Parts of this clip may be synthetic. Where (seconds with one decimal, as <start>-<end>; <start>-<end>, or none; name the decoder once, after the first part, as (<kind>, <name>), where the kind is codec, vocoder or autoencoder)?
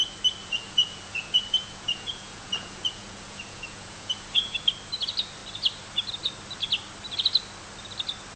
0.4-4.6 (vocoder, Vocos)